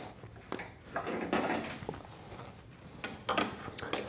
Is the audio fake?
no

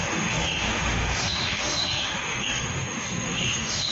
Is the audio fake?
yes